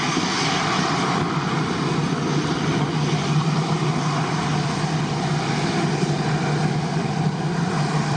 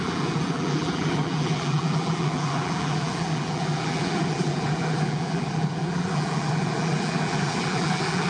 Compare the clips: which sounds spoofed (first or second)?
second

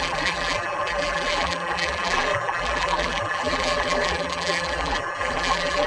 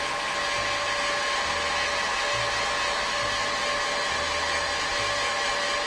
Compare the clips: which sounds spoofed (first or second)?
first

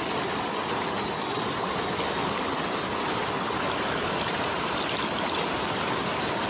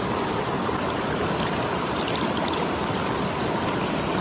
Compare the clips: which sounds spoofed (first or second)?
second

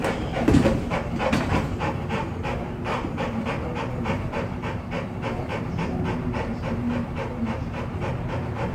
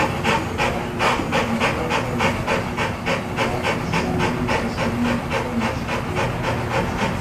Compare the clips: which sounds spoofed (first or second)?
first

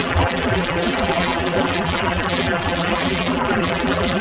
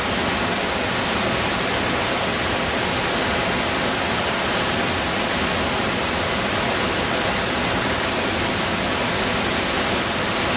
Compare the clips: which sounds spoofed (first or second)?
first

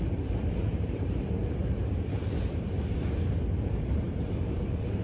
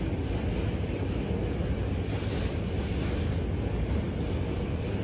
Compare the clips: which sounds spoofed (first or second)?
first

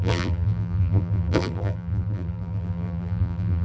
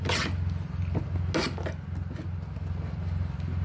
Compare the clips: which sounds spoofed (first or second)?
first